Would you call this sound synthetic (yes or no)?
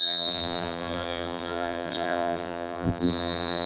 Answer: yes